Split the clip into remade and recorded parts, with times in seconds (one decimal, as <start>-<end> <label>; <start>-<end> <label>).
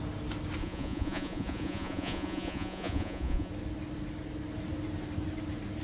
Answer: 0.0-0.6 recorded; 0.6-3.5 remade; 3.5-5.8 recorded